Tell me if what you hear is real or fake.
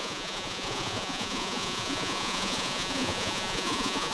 fake